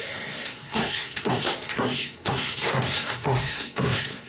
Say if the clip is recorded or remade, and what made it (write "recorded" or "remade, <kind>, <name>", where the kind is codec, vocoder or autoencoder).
remade, codec, SNAC